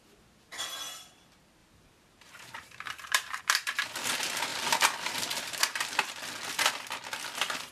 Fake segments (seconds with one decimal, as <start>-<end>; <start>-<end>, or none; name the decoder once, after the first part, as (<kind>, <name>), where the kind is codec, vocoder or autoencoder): 1.6-3.4 (vocoder, BigVGAN v2)